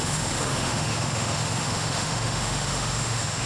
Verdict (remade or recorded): remade